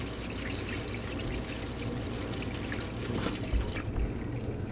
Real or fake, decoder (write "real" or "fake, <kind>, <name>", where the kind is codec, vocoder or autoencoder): real